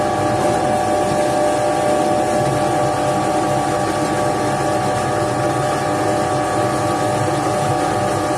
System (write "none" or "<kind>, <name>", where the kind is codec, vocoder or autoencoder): none